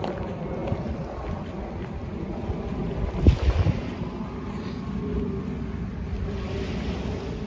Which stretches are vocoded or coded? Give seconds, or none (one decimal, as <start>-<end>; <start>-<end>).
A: none